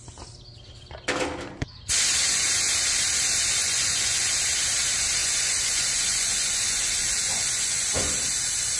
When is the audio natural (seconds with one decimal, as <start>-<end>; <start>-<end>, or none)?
0.0-3.6; 4.4-5.2; 8.1-8.8